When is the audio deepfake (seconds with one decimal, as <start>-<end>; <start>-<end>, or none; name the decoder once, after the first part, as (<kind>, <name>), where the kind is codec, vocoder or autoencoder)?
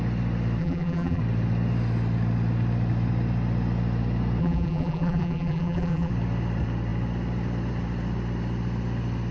0.6-1.2 (vocoder, BigVGAN v2); 4.4-6.1